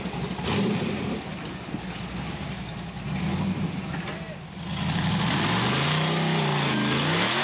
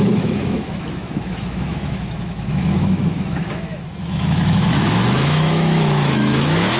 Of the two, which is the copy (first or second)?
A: second